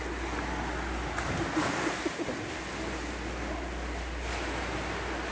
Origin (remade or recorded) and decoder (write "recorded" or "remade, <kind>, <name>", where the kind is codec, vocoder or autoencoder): recorded